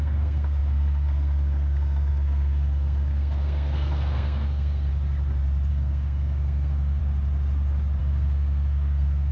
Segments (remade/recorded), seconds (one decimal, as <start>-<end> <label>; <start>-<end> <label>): 0.0-4.9 remade; 4.9-5.7 recorded; 5.7-7.0 remade; 7.0-8.0 recorded; 8.0-9.3 remade